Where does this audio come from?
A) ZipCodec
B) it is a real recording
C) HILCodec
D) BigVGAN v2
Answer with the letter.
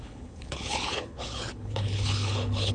C